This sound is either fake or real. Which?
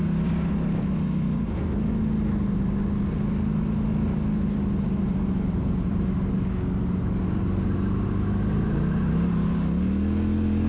real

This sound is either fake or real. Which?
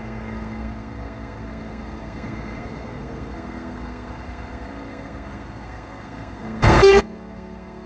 fake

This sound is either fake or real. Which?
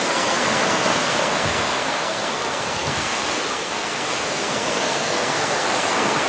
fake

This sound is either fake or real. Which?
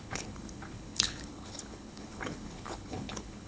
fake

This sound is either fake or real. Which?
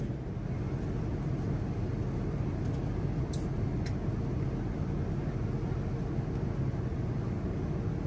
real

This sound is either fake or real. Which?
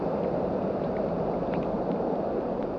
real